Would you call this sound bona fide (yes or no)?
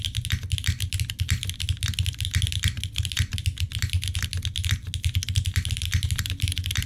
yes